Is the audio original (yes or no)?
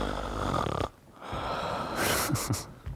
yes